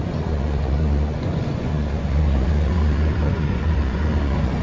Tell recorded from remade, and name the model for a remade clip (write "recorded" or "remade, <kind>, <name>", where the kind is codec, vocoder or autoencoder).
remade, vocoder, Vocos